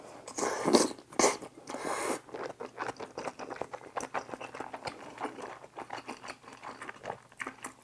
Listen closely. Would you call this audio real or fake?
real